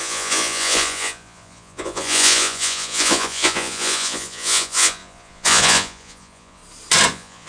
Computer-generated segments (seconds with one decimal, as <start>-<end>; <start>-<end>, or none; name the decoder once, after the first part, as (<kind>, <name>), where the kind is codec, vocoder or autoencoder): 0.0-6.6 (vocoder, Vocos); 7.1-7.5